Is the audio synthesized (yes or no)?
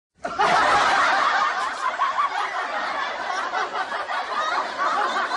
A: yes